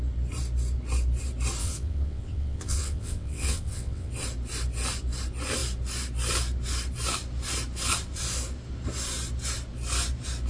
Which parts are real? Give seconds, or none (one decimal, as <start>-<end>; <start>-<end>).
0.0-1.6; 4.1-10.5